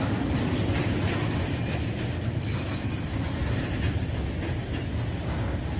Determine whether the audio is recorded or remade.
recorded